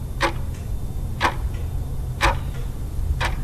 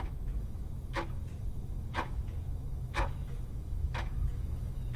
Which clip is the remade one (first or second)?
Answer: second